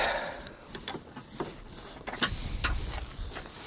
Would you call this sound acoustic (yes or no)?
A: yes